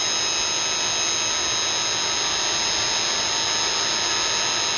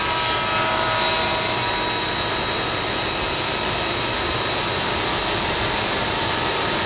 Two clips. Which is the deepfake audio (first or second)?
second